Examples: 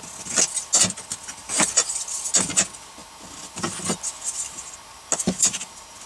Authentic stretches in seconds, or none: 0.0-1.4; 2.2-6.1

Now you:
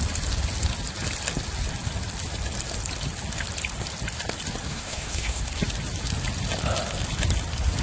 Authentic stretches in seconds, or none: 0.0-4.7; 5.4-7.8

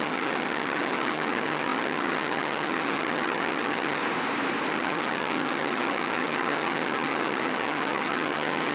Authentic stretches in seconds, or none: 4.0-4.7

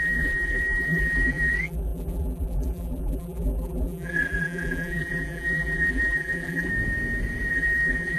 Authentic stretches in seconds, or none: 6.7-7.5

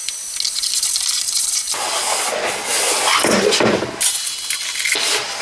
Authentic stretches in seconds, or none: 0.0-5.4

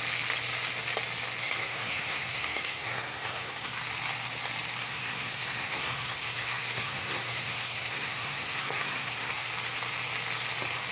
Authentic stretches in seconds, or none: 0.0-1.4; 3.7-4.8; 9.5-10.9